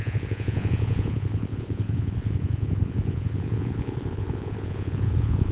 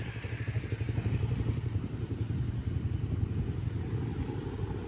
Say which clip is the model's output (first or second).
first